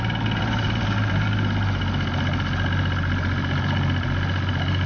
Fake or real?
real